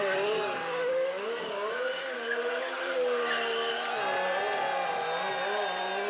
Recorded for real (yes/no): yes